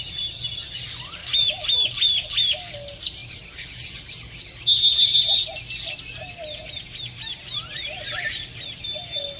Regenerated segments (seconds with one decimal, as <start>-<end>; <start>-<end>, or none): 1.2-1.9